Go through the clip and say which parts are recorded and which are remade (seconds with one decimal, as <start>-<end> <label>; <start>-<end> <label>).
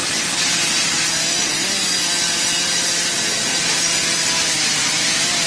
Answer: 0.0-5.5 recorded